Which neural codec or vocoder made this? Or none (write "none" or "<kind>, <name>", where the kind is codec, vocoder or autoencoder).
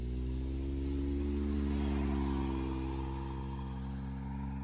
none